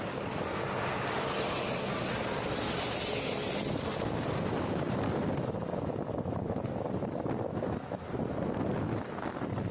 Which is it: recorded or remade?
recorded